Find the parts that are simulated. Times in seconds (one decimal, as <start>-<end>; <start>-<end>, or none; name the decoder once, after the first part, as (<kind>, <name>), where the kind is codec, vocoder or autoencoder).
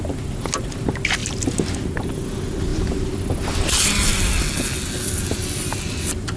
none